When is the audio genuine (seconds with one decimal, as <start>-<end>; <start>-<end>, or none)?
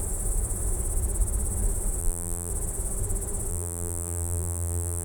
0.0-2.0; 2.5-3.5